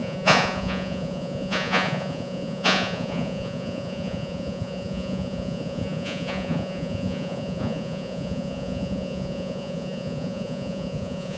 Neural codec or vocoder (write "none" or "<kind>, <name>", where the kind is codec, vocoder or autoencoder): vocoder, Vocos